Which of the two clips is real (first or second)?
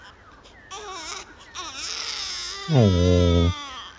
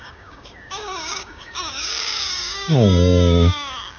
first